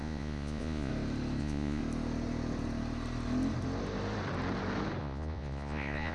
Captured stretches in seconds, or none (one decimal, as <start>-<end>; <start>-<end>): 0.9-1.4; 1.8-5.0